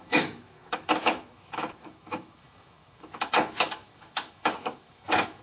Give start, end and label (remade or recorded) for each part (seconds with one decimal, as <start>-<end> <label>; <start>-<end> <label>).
0.0-5.4 remade